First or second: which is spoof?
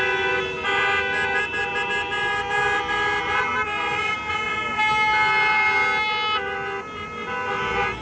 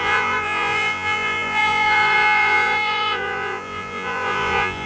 second